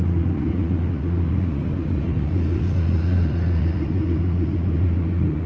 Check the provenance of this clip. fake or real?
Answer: fake